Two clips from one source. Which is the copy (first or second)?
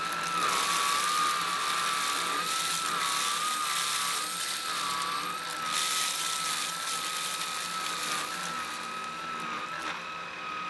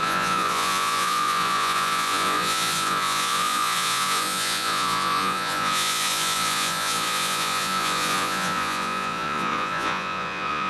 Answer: second